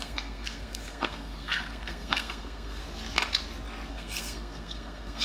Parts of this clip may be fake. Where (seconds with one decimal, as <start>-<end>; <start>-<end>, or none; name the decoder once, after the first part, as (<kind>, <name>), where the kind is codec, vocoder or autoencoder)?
0.0-2.8 (codec, SNAC); 3.9-5.2